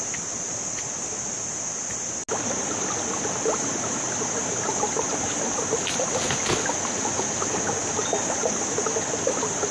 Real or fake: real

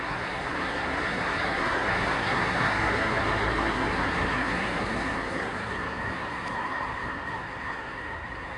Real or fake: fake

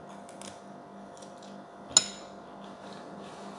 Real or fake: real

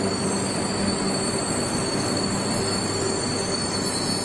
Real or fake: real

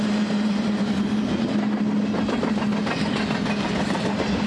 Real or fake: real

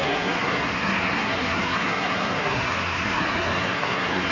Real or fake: fake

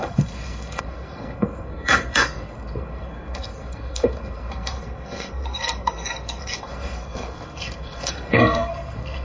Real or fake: fake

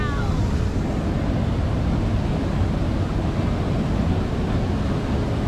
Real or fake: real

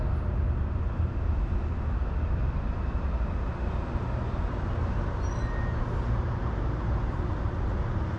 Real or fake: real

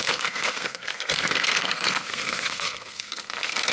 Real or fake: fake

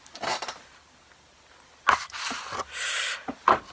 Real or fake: real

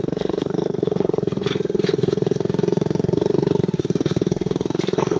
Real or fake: fake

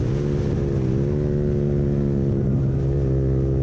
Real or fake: real